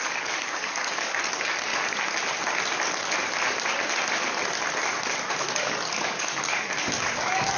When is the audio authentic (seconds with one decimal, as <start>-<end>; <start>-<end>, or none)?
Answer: 1.7-5.2

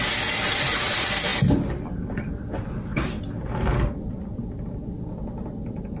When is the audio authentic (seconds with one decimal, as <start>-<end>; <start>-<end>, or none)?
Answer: 0.0-6.0

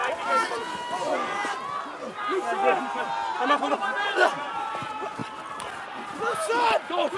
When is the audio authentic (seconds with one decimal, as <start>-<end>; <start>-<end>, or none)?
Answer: 0.0-2.8; 4.7-5.2